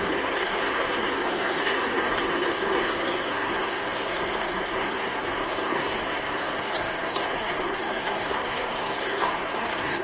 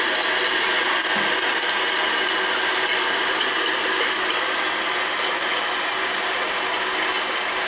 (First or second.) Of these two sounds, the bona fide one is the second